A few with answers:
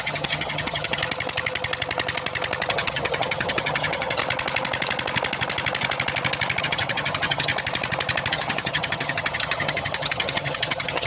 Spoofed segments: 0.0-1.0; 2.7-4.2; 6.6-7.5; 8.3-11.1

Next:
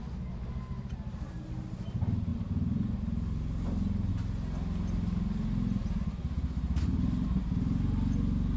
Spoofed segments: none